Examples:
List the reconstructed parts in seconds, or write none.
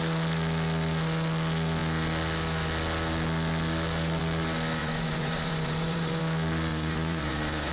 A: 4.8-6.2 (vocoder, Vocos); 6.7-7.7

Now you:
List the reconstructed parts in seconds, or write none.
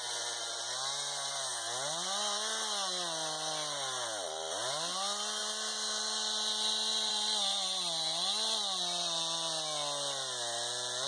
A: none